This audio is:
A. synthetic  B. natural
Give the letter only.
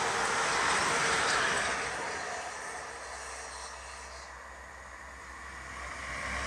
B